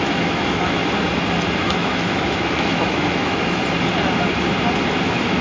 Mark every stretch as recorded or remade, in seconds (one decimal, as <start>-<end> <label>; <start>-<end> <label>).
0.0-0.8 remade; 0.8-1.6 recorded; 1.6-3.6 remade; 3.6-5.0 recorded; 5.0-5.4 remade